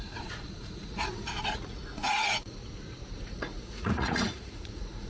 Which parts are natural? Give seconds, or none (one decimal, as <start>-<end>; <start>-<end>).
2.6-3.2